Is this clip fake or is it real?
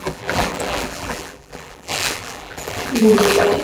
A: fake